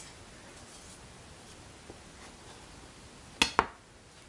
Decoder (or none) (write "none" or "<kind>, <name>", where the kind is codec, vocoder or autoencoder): none